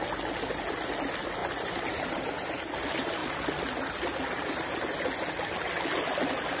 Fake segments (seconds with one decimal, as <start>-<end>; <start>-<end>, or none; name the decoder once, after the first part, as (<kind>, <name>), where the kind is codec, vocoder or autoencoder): none